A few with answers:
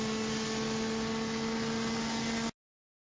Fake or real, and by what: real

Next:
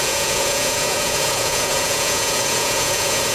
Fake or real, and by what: fake, vocoder, Vocos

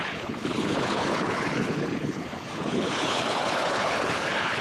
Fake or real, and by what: fake, codec, HILCodec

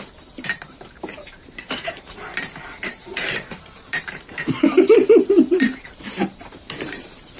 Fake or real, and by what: fake, vocoder, BigVGAN v2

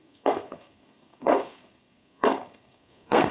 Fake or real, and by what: fake, codec, SNAC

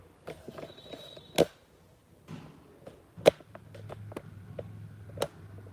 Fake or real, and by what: real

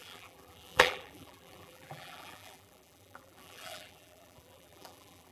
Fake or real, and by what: fake, vocoder, BigVGAN v2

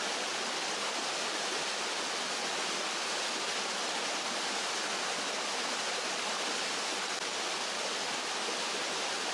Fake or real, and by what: real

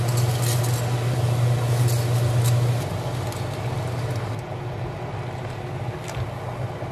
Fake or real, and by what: real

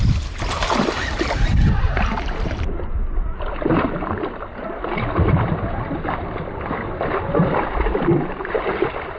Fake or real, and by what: fake, vocoder, BigVGAN v2